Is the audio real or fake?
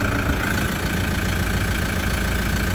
real